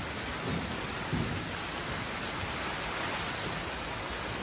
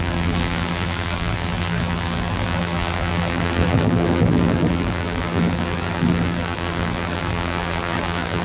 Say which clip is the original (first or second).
first